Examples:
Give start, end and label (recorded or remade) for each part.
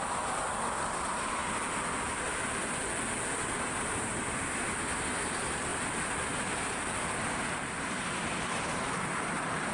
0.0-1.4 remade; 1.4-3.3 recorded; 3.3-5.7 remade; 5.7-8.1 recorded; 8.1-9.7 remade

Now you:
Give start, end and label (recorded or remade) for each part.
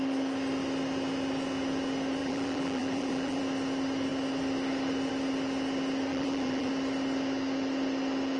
0.0-2.2 recorded; 2.2-3.4 remade; 3.4-6.1 recorded; 6.1-6.7 remade; 6.7-8.4 recorded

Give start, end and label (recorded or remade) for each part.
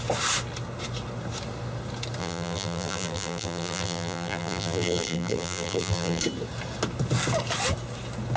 0.0-2.2 recorded; 2.2-6.2 remade; 6.2-8.4 recorded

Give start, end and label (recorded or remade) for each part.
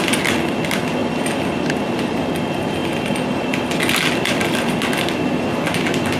0.0-1.0 recorded; 1.0-2.2 remade; 2.2-6.2 recorded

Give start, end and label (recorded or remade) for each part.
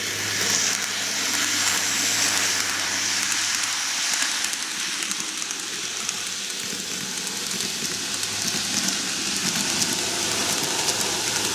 0.0-10.4 recorded; 10.4-11.5 remade